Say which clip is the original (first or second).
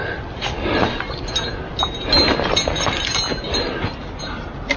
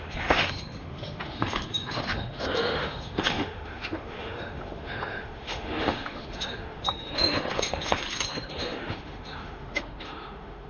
first